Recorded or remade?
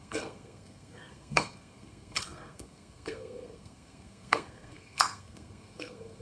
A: remade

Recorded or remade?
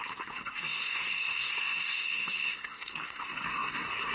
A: remade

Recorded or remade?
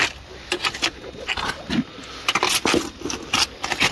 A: recorded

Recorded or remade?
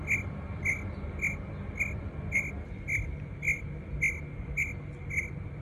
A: recorded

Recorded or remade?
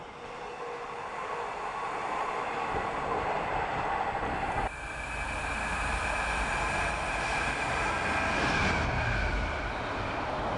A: recorded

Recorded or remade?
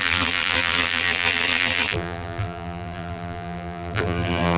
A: remade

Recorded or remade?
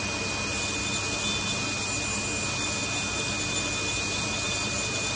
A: recorded